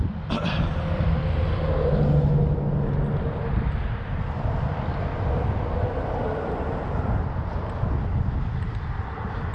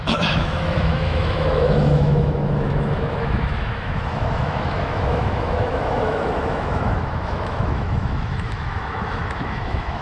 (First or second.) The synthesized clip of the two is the second